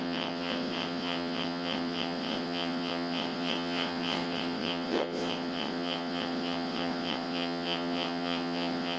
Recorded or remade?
remade